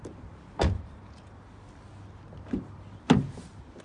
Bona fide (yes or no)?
yes